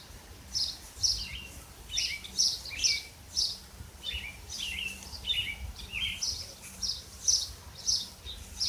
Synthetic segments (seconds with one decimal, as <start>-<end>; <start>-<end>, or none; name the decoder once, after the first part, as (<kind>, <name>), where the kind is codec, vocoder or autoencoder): 0.0-1.3 (vocoder, BigVGAN v2); 2.9-8.7